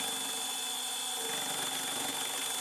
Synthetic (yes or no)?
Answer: no